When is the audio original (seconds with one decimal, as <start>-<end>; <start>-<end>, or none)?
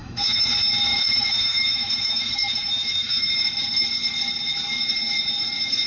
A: 0.5-0.9; 3.3-5.9